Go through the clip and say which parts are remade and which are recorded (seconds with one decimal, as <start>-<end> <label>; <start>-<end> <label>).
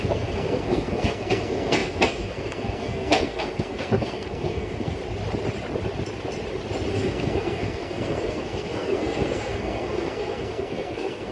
0.0-5.0 remade; 5.0-6.9 recorded; 6.9-11.3 remade